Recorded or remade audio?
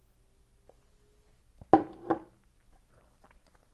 recorded